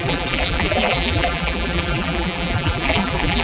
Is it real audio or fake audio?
fake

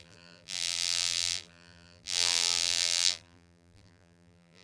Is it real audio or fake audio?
fake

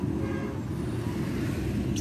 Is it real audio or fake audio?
real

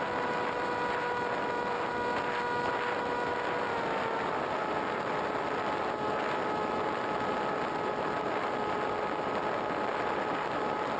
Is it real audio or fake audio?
real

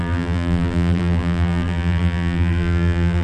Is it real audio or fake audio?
fake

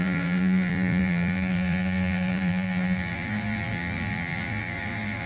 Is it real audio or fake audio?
fake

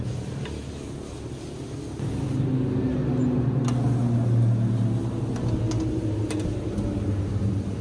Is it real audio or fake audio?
real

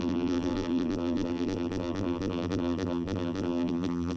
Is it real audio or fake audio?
fake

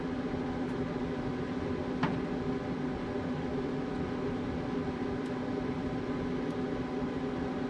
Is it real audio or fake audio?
real